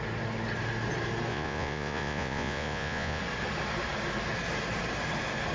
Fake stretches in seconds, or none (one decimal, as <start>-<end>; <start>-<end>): 1.3-3.2